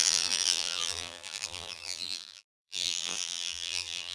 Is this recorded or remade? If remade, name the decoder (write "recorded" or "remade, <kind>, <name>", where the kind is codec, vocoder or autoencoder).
remade, vocoder, BigVGAN v2